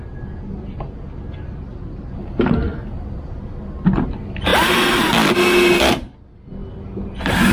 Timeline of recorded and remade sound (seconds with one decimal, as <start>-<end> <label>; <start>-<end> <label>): 0.0-4.5 recorded; 4.5-5.1 remade; 5.1-7.5 recorded